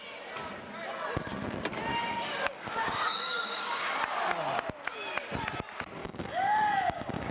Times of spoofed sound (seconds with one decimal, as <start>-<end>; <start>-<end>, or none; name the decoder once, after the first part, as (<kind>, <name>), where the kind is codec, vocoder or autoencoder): 1.9-3.9 (codec, DAC); 6.0-7.3

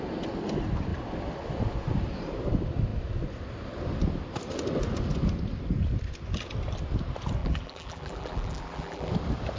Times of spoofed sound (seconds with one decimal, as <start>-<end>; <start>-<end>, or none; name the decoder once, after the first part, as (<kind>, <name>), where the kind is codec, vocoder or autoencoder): 7.4-9.1 (vocoder, BigVGAN v2)